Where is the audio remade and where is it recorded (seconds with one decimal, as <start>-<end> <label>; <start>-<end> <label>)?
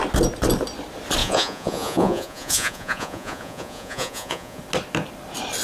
0.0-1.2 recorded; 1.2-4.6 remade; 4.6-5.6 recorded